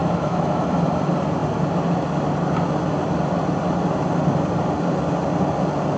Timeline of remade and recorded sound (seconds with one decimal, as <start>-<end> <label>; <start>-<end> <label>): 0.0-0.6 remade; 0.6-6.0 recorded